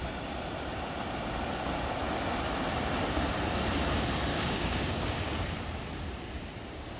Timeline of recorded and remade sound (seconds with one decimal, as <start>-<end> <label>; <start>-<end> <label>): 0.0-4.3 recorded; 4.3-5.3 remade; 5.3-7.0 recorded